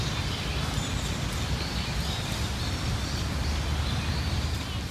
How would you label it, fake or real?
real